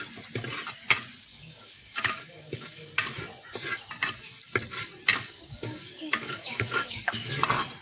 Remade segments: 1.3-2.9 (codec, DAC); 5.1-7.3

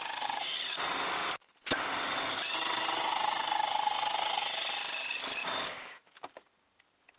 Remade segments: 5.4-6.8 (codec, DAC)

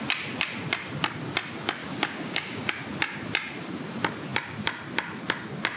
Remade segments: 1.8-2.7 (codec, DAC)

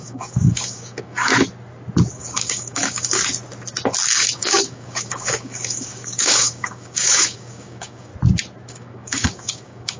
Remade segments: 0.0-1.3 (codec, DAC); 2.1-3.2; 4.1-8.1; 8.7-10.0

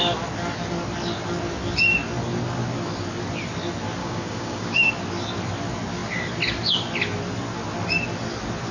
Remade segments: 4.0-4.9 (codec, DAC)